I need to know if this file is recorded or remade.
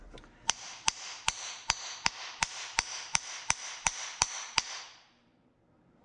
remade